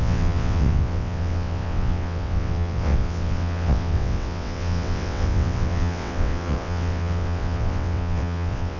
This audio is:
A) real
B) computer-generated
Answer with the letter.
B